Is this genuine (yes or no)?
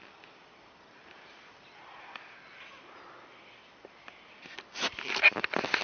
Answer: yes